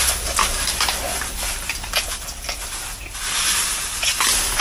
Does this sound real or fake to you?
real